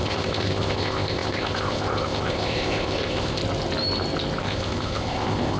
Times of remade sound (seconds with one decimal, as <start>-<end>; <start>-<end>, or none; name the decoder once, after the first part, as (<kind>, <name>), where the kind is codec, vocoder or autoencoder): 0.0-3.4 (codec, ZipCodec); 4.4-5.6